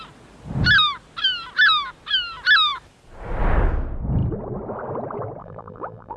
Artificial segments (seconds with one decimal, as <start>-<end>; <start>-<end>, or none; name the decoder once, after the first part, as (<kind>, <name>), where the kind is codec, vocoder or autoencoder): 5.4-6.2 (vocoder, BigVGAN v2)